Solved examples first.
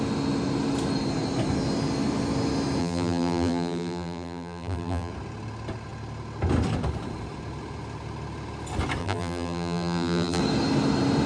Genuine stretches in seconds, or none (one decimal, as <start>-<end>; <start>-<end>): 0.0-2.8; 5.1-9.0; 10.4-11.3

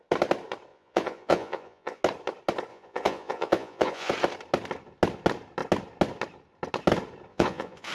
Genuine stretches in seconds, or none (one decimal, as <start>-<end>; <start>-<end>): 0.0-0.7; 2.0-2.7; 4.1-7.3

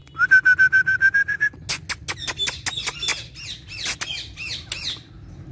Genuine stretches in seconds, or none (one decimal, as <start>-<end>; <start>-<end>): 0.0-5.5

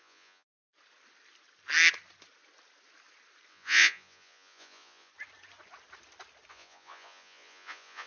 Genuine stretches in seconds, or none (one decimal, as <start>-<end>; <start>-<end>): 0.7-3.5; 5.1-6.5